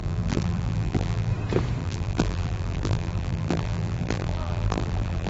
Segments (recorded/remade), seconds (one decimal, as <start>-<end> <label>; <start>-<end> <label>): 0.0-1.3 remade; 1.3-1.8 recorded; 1.8-5.3 remade